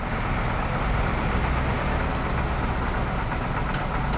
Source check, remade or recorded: recorded